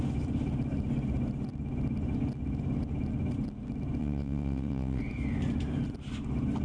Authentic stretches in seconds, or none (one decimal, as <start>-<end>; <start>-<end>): 0.0-4.0; 5.0-6.6